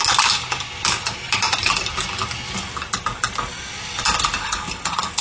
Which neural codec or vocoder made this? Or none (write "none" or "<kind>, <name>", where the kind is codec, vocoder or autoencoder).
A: none